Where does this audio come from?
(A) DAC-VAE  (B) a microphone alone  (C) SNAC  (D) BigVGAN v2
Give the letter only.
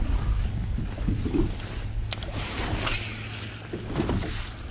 B